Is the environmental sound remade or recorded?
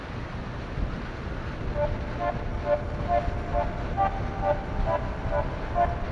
recorded